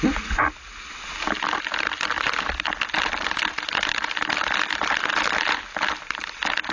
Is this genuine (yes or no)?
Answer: yes